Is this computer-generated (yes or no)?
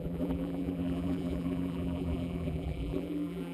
yes